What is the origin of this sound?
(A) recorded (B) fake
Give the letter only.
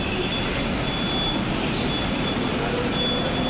A